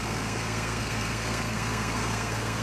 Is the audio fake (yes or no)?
yes